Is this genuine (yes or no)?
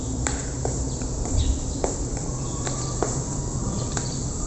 no